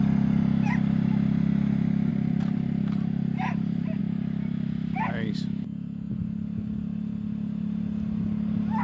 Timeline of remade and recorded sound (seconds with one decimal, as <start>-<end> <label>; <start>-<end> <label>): 0.0-2.1 recorded; 2.1-4.0 remade; 4.0-8.8 recorded

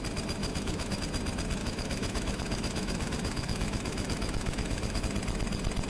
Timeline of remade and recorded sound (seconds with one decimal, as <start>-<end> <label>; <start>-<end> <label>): 0.0-0.4 recorded; 0.4-1.0 remade; 1.0-1.6 recorded; 1.6-5.0 remade; 5.0-5.9 recorded

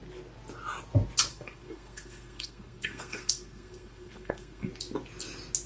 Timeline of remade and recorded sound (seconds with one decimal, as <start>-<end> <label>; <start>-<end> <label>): 0.0-1.3 recorded; 1.3-4.7 remade; 4.7-5.7 recorded

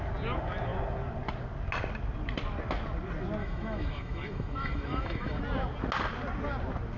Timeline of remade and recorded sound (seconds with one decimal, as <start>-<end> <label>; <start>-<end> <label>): 0.0-3.4 recorded; 3.4-5.4 remade; 5.4-7.0 recorded

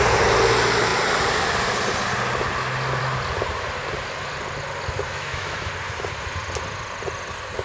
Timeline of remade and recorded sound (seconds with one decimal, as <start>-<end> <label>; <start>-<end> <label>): 0.0-5.1 recorded; 5.1-5.7 remade; 5.7-7.6 recorded

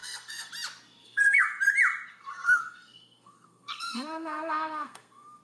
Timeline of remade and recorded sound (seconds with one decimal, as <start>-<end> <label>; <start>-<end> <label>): 0.0-0.5 remade; 0.5-1.0 recorded; 1.0-1.6 remade; 1.6-2.1 recorded; 2.1-5.4 remade

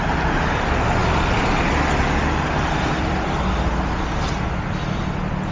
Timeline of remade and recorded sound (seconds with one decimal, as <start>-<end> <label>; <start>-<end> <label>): 0.0-5.5 recorded